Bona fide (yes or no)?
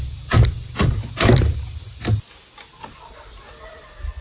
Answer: yes